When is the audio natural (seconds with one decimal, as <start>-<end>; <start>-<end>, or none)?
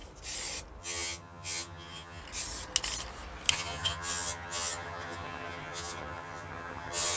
0.0-0.8; 2.2-3.5